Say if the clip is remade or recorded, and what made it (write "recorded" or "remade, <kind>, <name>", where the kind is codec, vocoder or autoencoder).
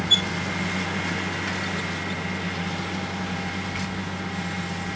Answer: recorded